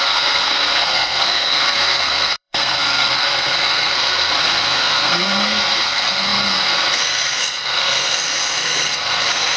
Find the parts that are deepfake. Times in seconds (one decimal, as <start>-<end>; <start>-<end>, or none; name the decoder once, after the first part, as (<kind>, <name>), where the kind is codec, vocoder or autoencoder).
0.0-9.6 (codec, SNAC)